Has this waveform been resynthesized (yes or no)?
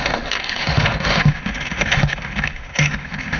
yes